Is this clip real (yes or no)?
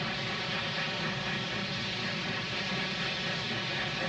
yes